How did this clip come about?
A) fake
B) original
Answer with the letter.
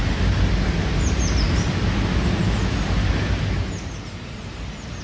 B